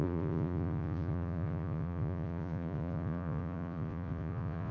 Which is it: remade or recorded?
remade